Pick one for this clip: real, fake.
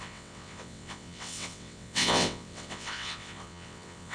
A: fake